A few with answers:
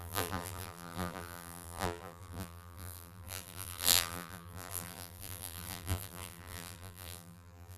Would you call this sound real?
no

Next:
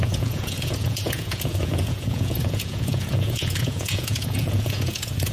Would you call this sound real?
no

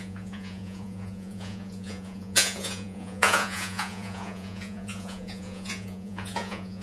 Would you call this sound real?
no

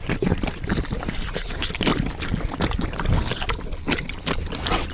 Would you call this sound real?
yes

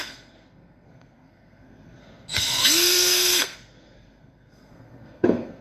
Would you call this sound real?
no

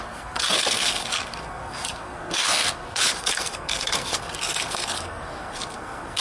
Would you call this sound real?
no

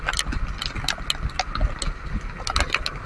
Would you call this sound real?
yes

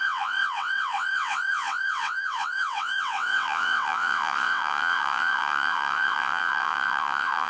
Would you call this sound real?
no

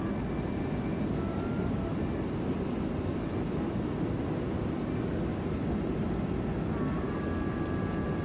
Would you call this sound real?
yes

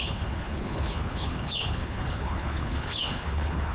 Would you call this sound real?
no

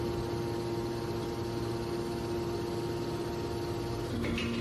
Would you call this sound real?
yes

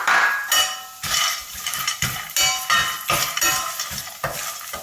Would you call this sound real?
yes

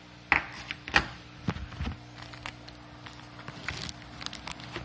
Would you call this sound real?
yes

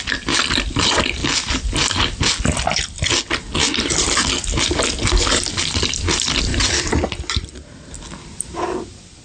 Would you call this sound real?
yes